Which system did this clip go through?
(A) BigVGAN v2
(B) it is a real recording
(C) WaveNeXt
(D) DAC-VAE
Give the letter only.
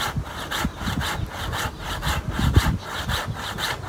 B